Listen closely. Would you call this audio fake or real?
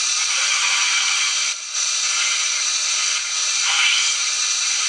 real